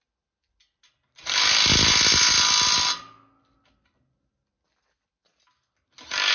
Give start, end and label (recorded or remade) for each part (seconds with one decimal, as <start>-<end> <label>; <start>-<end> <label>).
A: 0.0-6.3 recorded